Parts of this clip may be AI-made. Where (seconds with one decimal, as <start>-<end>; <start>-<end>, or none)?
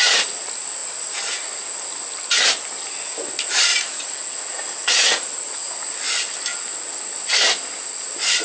3.7-5.7